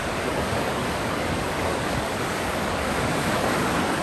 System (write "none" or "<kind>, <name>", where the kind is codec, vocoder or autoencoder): codec, DAC